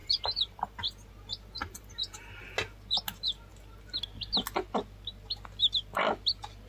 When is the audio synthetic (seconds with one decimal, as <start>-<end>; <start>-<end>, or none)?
0.0-0.8; 1.6-2.4